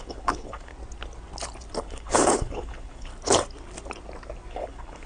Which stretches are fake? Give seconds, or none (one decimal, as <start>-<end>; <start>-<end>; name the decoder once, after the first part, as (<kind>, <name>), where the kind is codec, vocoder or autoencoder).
0.0-0.7 (codec, HILCodec); 1.8-3.1; 4.5-5.1